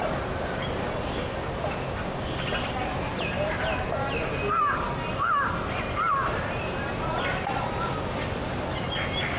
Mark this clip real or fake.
real